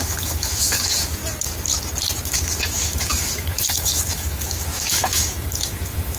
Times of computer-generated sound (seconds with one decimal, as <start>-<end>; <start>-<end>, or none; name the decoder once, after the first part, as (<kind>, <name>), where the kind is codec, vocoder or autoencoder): 0.0-1.2 (autoencoder, DAC-VAE); 2.2-6.2